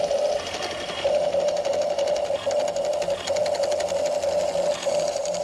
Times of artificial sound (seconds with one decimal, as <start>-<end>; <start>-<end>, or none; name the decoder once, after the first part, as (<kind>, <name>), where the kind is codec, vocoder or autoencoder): none